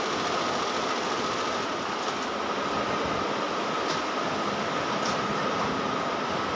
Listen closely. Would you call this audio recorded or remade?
recorded